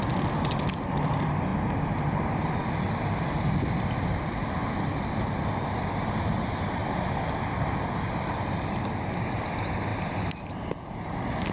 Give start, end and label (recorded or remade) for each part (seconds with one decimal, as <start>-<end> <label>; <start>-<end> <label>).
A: 0.0-11.5 recorded